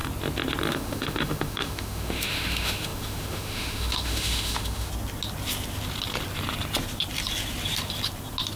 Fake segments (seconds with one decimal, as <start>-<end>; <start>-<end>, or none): 0.7-4.9